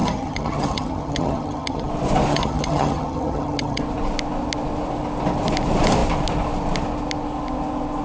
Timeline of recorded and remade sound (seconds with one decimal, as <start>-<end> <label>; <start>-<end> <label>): 0.0-1.9 remade; 1.9-2.3 recorded; 2.3-3.8 remade; 3.8-8.0 recorded